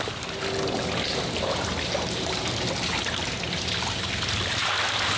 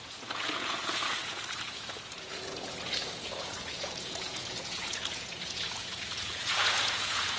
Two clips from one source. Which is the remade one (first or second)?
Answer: second